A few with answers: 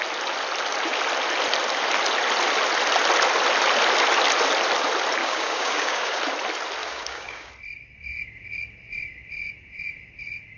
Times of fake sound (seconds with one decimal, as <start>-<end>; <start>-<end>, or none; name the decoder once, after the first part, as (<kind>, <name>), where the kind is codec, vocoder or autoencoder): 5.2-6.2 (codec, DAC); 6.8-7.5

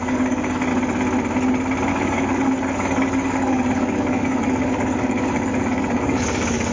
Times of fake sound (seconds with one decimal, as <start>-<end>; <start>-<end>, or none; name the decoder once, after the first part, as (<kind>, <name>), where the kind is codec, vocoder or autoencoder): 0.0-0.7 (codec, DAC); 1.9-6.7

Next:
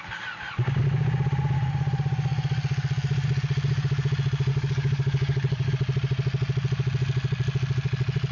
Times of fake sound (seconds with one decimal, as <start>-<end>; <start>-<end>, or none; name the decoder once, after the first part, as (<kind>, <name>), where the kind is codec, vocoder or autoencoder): 4.5-5.7 (codec, DAC)

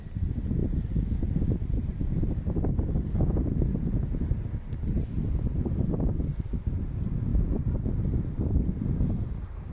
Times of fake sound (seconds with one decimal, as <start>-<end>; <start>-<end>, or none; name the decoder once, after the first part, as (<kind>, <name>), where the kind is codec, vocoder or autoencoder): none

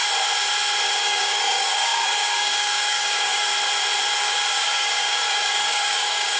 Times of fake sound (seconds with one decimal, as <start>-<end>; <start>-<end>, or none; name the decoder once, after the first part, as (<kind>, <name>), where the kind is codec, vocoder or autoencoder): 1.0-3.5 (codec, DAC); 4.2-6.4

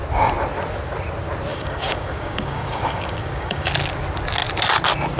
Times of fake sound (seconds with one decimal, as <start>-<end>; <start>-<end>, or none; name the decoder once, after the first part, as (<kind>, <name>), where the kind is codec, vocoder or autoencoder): 1.5-3.7 (codec, DAC)